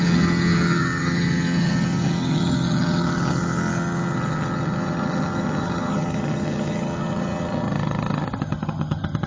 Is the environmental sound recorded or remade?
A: remade